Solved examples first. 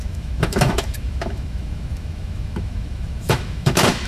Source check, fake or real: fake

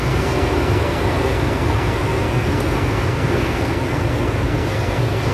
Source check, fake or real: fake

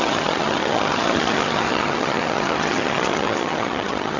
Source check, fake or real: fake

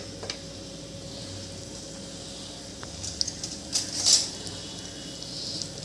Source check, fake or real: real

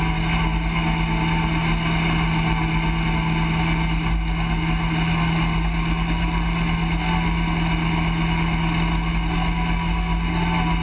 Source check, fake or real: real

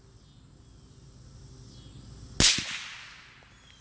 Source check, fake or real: real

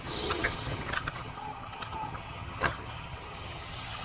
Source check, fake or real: fake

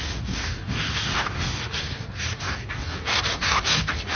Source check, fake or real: fake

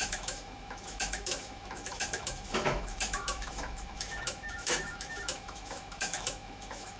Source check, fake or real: fake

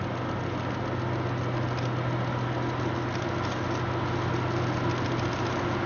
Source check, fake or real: real